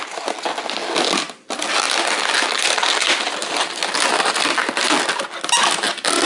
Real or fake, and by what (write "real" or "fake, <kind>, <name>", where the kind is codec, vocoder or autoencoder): real